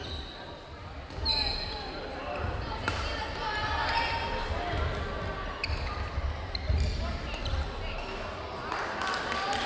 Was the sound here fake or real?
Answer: real